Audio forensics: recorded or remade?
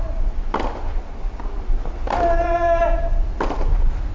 recorded